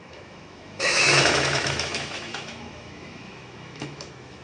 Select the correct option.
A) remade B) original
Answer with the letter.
A